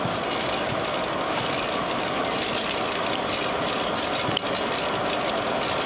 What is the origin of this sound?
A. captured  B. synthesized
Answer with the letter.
A